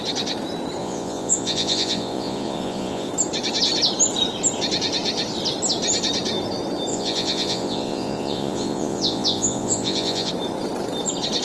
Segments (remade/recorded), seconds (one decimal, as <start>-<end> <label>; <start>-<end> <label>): 0.0-0.8 recorded; 0.8-3.1 remade; 3.1-6.9 recorded; 6.9-10.3 remade; 10.3-11.4 recorded